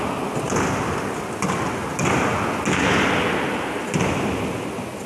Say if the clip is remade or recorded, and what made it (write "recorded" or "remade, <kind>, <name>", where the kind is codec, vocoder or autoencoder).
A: recorded